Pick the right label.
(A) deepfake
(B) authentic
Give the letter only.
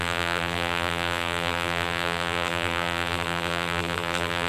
A